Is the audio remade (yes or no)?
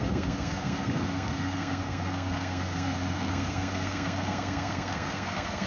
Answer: yes